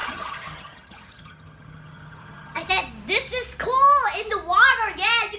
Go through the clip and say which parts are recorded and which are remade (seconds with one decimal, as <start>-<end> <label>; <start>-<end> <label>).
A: 0.0-2.7 remade; 2.7-5.4 recorded